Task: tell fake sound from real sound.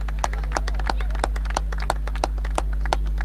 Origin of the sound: real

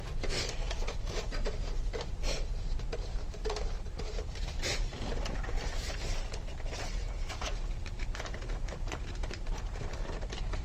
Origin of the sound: fake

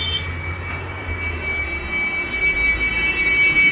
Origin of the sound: real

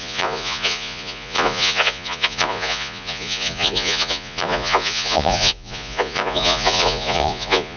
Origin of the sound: fake